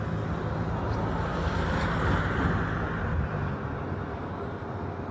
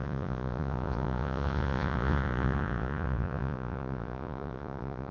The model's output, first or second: second